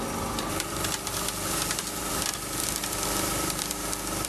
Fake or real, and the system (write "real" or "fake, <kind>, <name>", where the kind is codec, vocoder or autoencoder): fake, vocoder, BigVGAN v2